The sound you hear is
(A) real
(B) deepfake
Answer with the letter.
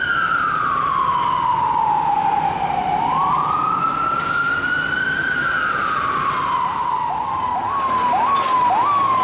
A